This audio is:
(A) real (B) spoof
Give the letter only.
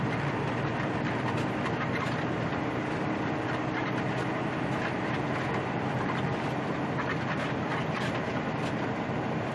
A